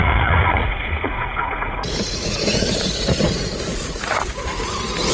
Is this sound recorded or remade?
remade